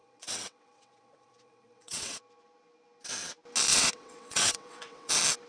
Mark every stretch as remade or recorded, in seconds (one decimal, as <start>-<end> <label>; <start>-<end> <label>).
0.0-2.2 remade; 2.2-3.7 recorded; 3.7-5.1 remade; 5.1-5.5 recorded